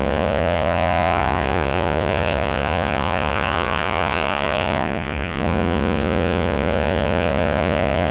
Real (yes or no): no